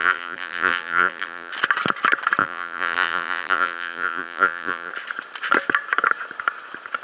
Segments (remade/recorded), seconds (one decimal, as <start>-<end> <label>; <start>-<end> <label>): 0.0-1.5 remade; 1.5-2.4 recorded; 2.4-4.9 remade; 4.9-7.0 recorded